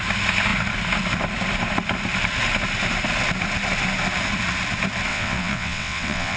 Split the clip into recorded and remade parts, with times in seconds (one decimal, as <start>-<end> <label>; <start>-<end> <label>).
0.0-5.1 recorded; 5.1-6.4 remade